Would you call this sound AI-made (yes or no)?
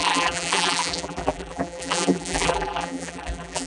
yes